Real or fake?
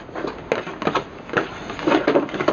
real